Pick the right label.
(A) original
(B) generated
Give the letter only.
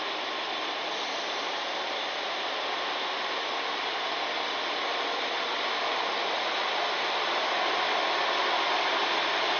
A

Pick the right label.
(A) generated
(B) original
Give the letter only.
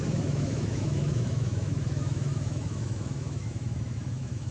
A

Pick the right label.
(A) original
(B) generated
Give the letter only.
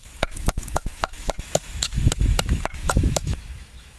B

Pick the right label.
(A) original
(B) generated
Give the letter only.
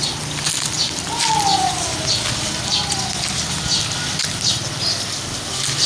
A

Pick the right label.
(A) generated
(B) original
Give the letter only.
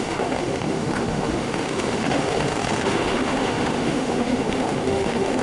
A